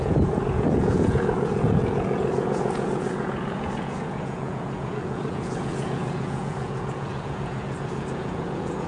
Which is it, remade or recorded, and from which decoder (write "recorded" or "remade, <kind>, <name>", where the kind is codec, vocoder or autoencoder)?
remade, vocoder, Vocos